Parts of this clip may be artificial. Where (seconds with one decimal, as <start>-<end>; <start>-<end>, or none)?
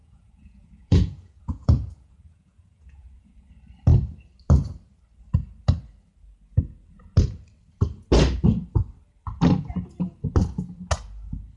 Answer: 0.0-3.3